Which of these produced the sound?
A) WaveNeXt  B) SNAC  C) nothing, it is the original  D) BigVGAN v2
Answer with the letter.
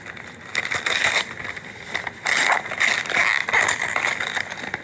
C